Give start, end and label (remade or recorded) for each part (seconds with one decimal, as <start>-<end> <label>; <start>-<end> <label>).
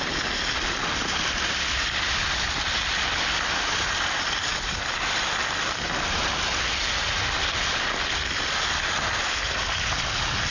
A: 0.0-10.5 recorded